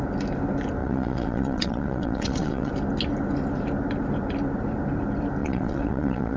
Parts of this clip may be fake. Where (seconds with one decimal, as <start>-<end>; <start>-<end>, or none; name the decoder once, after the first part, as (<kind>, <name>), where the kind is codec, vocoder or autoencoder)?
0.8-2.7 (vocoder, WaveNeXt); 5.4-6.4

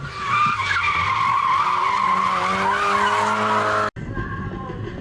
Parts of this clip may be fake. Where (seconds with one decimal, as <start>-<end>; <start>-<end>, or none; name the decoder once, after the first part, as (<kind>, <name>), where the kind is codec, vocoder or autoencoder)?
none